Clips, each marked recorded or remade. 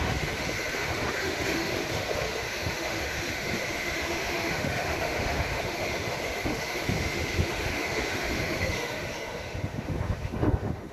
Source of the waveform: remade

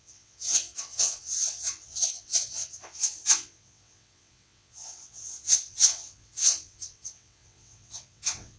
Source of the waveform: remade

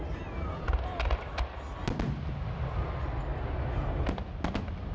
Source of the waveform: recorded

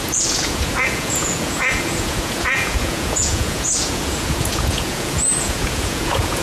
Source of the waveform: remade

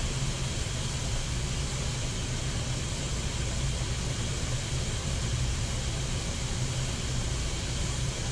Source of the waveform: recorded